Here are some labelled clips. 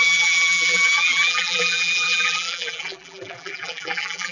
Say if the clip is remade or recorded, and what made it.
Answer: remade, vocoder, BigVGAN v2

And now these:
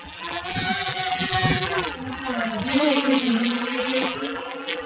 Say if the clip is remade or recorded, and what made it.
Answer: remade, vocoder, BigVGAN v2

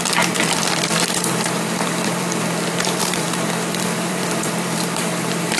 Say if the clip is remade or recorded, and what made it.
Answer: remade, vocoder, BigVGAN v2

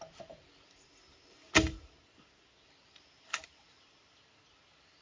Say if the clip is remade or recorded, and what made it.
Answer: recorded